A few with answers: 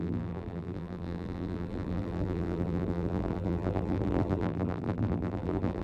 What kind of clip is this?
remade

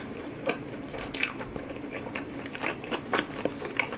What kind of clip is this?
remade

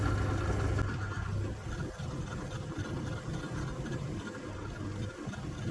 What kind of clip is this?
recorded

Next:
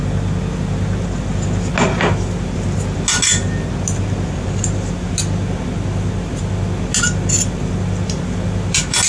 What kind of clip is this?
recorded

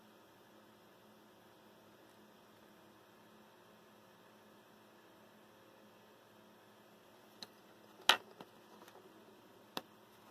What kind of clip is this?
recorded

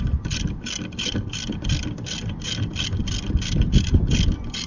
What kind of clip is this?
remade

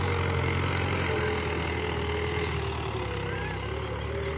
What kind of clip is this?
recorded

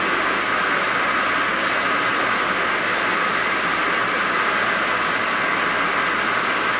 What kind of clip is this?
recorded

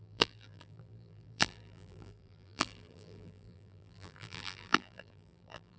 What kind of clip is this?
remade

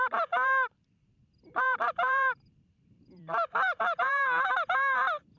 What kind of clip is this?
remade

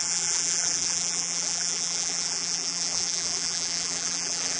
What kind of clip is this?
remade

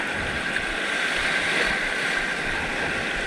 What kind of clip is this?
recorded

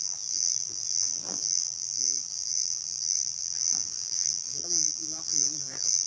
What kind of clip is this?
remade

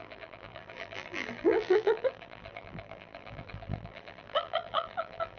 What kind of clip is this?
remade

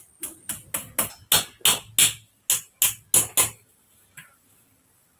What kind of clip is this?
recorded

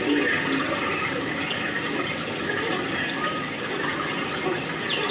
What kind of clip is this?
recorded